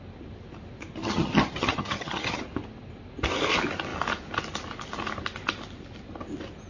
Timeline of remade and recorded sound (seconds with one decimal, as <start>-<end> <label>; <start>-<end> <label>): 0.0-1.0 recorded; 1.0-2.4 remade; 2.4-6.7 recorded